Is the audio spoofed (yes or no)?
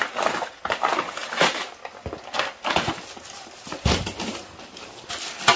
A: no